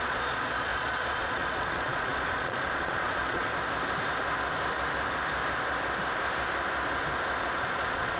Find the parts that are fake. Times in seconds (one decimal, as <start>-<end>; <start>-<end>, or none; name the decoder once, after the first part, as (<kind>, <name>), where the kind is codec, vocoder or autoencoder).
0.0-3.5 (vocoder, Vocos); 7.4-8.2